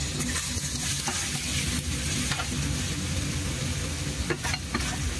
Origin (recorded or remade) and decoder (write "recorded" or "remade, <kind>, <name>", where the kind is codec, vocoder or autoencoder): recorded